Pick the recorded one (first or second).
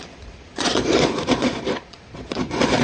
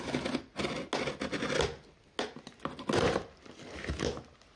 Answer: second